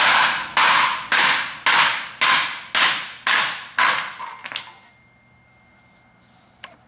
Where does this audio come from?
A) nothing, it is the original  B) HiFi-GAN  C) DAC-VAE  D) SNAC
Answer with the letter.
A